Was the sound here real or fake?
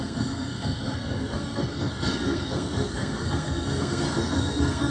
fake